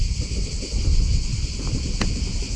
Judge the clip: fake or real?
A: real